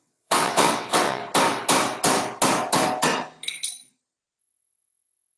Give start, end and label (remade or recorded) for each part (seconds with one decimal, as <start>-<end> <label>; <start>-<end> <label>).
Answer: 0.0-1.2 remade; 1.2-4.4 recorded; 4.4-5.4 remade